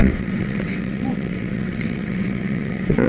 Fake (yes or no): yes